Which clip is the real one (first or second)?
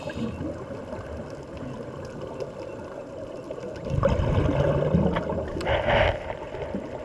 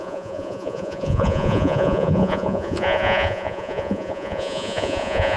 first